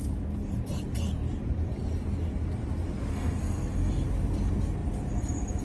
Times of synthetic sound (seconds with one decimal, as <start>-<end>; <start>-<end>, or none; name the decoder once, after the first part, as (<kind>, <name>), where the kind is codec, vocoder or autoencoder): 3.1-3.9 (codec, SNAC)